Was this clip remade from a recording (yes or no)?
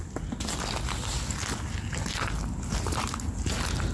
no